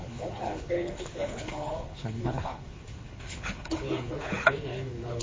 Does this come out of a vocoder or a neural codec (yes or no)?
yes